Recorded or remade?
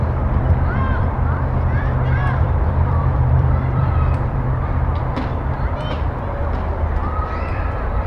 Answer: remade